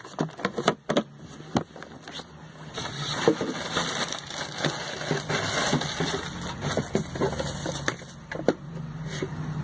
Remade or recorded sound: recorded